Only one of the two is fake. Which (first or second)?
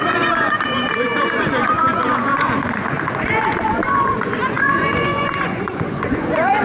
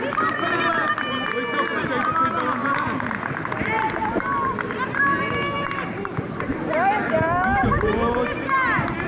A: first